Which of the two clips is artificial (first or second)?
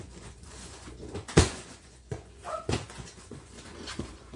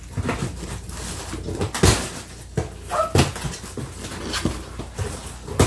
first